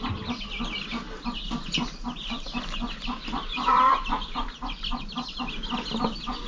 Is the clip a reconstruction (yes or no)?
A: no